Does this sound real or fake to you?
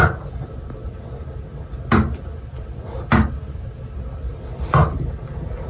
real